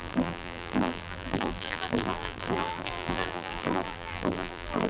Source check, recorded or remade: remade